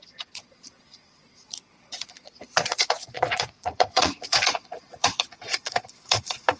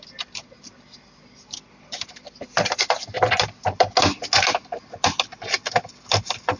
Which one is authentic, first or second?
second